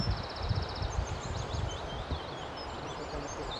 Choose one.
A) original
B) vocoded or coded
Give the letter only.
A